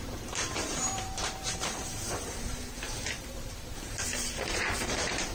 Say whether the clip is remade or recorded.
remade